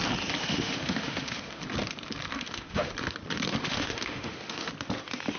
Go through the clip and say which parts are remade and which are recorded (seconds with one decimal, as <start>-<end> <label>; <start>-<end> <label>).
0.0-0.4 recorded; 0.4-1.6 remade; 1.6-2.3 recorded; 2.3-2.9 remade; 2.9-3.6 recorded; 3.6-4.7 remade; 4.7-5.4 recorded